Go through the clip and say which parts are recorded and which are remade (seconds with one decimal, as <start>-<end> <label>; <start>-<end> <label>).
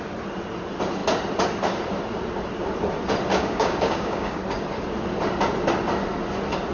0.0-3.3 recorded; 3.3-4.4 remade; 4.4-6.7 recorded